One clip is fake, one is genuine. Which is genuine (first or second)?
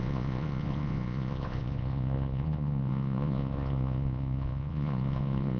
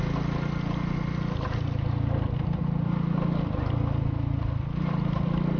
second